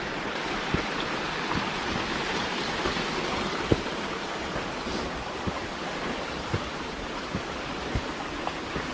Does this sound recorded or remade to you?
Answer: recorded